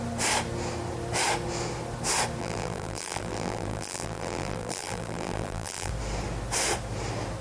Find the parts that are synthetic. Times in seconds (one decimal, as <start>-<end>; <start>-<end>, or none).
2.4-5.9